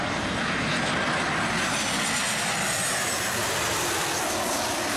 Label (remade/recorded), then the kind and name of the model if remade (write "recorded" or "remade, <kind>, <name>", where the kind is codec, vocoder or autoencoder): recorded